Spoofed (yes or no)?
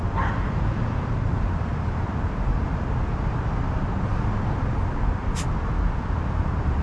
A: no